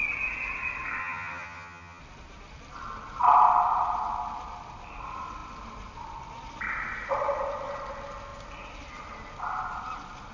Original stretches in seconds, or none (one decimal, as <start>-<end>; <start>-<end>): 0.0-1.0; 2.0-10.3